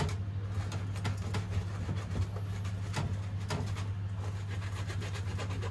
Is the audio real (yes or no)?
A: yes